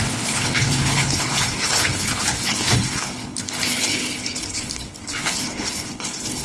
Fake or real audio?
fake